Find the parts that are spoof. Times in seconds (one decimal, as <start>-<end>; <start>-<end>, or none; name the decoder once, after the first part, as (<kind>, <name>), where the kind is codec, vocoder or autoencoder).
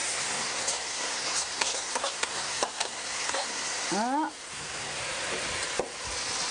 0.0-3.9 (codec, SNAC); 4.3-5.0